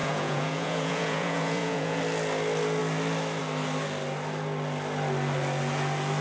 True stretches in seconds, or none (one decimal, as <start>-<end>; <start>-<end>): 2.0-6.2